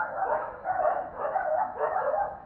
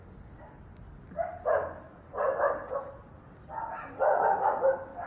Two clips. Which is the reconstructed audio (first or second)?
first